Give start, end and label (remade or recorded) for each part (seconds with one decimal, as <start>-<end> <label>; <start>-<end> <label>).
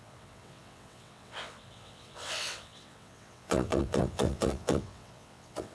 0.0-5.7 remade